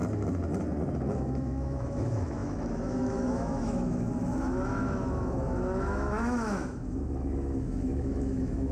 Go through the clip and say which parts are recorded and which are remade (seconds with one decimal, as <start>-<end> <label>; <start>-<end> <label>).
0.0-1.1 recorded; 1.1-8.7 remade